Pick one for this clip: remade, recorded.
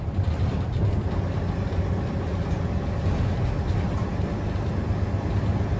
recorded